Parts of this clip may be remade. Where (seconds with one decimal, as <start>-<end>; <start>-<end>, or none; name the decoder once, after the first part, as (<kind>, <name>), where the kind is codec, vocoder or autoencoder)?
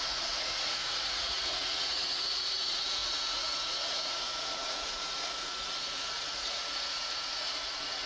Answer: 0.0-8.1 (vocoder, Vocos)